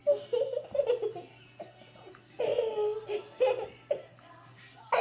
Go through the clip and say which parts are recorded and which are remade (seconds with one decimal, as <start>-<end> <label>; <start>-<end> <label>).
0.0-5.0 recorded